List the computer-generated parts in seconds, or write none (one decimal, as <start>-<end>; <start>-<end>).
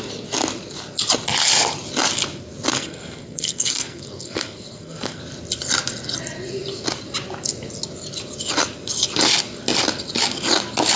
2.7-5.2